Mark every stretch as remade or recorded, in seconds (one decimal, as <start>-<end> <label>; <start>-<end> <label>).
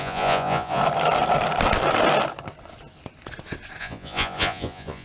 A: 0.0-0.8 remade; 0.8-3.8 recorded; 3.8-5.0 remade